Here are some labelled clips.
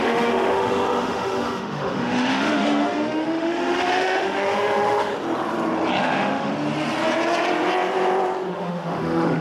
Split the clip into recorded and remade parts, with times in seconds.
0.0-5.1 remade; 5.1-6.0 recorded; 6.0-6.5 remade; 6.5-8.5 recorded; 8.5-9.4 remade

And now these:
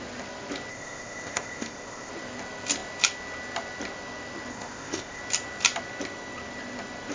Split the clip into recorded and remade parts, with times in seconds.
0.0-0.7 recorded; 0.7-2.1 remade; 2.1-4.5 recorded; 4.5-5.2 remade; 5.2-7.1 recorded

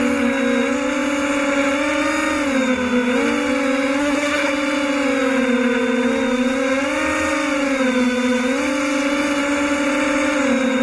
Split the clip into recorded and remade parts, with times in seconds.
0.0-4.0 recorded; 4.0-4.5 remade; 4.5-10.8 recorded